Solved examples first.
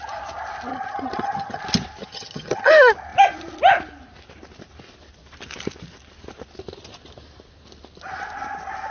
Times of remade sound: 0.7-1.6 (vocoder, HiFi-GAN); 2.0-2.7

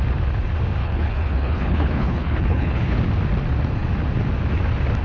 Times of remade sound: 0.8-3.0 (codec, HILCodec)

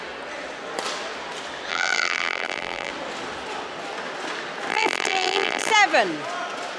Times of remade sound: 1.7-2.9 (vocoder, BigVGAN v2); 4.7-5.7

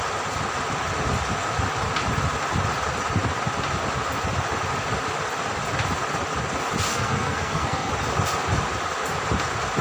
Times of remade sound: 6.9-7.9 (codec, SNAC)